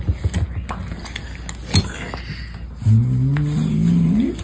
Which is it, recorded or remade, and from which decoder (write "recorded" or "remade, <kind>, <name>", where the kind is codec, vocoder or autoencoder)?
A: recorded